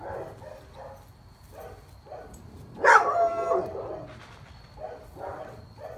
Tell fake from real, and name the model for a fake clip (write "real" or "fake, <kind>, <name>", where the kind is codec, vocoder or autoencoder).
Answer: real